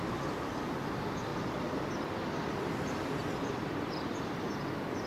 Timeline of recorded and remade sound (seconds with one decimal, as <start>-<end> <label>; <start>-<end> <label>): 0.0-1.3 recorded; 1.3-4.4 remade; 4.4-5.1 recorded